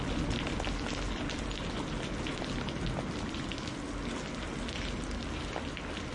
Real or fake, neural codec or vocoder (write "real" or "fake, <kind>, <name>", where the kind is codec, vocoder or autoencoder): real